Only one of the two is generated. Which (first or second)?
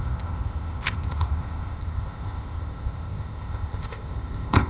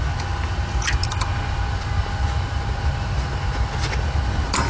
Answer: first